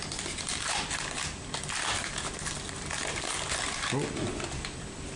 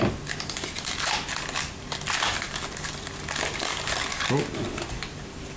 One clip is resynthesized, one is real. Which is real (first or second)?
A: second